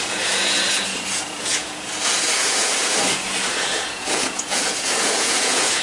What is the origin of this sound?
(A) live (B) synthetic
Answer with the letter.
B